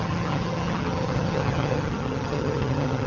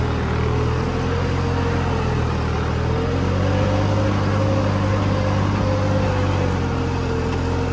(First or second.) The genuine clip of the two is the second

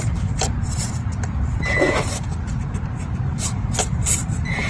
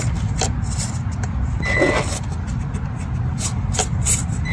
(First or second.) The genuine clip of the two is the second